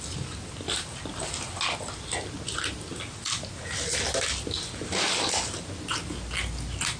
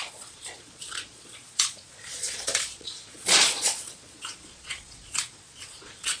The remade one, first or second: second